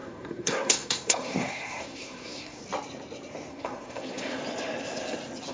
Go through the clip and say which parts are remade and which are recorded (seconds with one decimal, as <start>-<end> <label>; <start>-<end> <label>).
0.0-2.6 remade; 2.6-3.5 recorded; 3.5-4.4 remade; 4.4-5.5 recorded